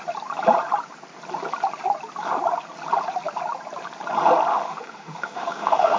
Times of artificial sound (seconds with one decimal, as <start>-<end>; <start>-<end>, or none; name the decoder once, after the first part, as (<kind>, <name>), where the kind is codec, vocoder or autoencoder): 4.5-6.0 (autoencoder, DAC-VAE)